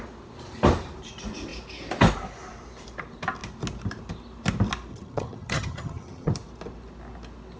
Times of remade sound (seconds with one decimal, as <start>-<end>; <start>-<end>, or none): 4.9-6.3